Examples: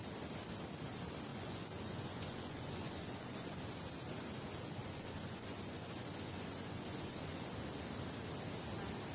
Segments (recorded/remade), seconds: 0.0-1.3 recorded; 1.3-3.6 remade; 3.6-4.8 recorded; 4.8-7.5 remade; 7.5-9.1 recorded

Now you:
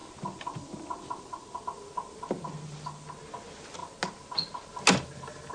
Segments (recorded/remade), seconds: 0.0-5.5 recorded